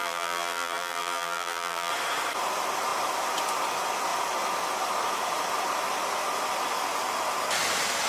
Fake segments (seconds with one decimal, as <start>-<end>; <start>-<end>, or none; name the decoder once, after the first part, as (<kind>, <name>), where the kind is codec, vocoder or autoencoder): 0.0-1.9 (vocoder, BigVGAN v2)